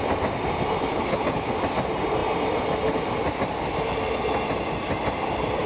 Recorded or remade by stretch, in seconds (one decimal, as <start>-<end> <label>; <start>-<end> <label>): 0.0-0.9 recorded; 0.9-1.5 remade; 1.5-5.7 recorded